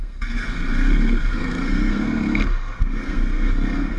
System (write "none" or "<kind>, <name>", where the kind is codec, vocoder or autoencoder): codec, SNAC